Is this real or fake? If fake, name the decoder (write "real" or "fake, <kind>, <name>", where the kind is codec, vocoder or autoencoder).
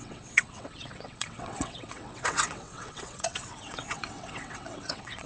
fake, vocoder, WaveNeXt